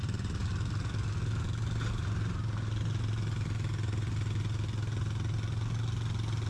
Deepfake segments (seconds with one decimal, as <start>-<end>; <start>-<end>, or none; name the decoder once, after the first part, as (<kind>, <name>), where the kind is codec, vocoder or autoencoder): none